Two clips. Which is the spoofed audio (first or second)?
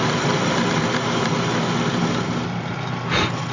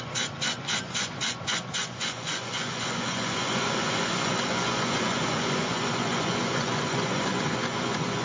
second